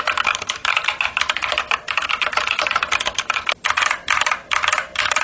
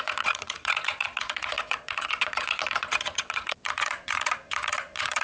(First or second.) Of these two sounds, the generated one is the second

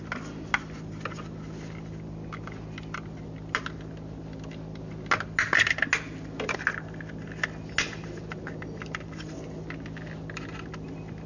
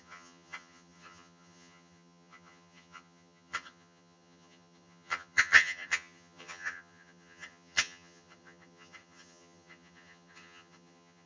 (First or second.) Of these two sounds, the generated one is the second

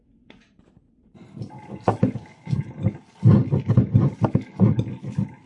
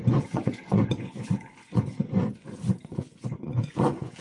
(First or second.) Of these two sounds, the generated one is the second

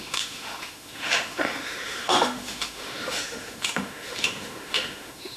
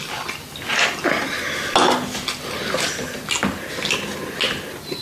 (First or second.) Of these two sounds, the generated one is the first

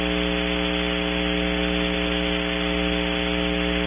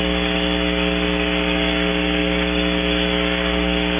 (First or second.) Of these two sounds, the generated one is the second